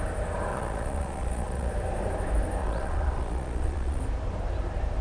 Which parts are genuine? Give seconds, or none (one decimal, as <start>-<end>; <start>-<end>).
0.0-0.5; 1.7-2.6; 4.0-5.0